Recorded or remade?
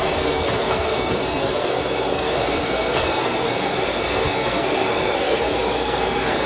remade